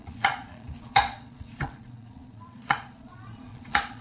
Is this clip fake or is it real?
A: fake